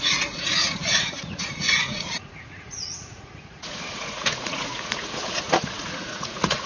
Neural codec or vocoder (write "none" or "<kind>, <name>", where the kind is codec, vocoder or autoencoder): vocoder, Vocos